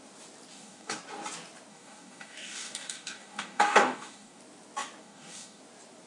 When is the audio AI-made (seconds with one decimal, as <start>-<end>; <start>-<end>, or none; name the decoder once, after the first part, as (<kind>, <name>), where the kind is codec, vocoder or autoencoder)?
0.5-1.0 (codec, DAC); 1.7-4.4; 5.0-5.6